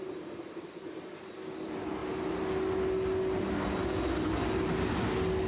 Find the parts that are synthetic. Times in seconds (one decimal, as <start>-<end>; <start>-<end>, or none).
none